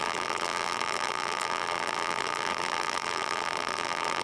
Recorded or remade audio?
remade